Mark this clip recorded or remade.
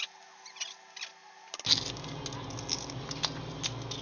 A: recorded